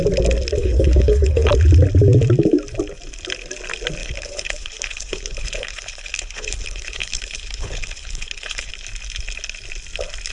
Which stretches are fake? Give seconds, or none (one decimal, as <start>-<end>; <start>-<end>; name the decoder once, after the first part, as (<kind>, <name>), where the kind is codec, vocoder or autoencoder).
0.6-1.5 (codec, HILCodec); 4.0-8.7